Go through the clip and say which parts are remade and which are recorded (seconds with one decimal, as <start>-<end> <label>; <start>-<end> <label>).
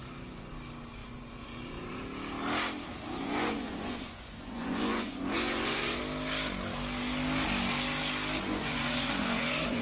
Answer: 0.0-0.5 remade; 0.5-1.0 recorded; 1.0-2.0 remade; 2.0-3.2 recorded; 3.2-6.0 remade; 6.0-8.5 recorded; 8.5-9.8 remade